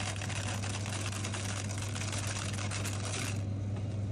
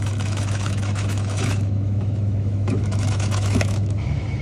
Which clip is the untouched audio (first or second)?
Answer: first